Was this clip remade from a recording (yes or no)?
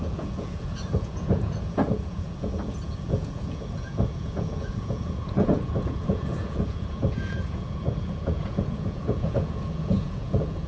yes